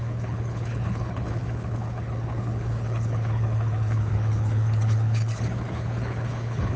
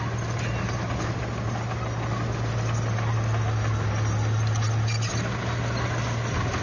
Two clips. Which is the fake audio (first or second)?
first